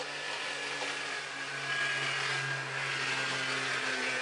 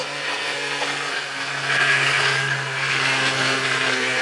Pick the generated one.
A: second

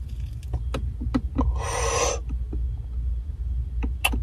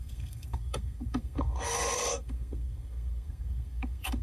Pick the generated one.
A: second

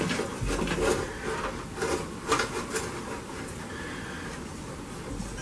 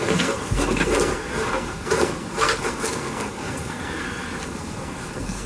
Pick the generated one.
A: second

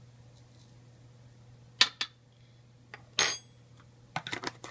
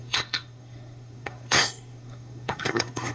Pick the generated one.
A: second